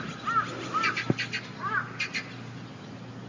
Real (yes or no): yes